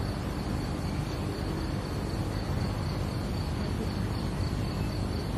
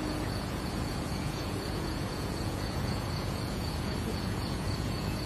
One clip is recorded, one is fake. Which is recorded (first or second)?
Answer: first